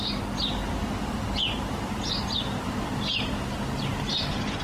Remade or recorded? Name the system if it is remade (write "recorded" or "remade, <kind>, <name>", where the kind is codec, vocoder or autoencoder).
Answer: recorded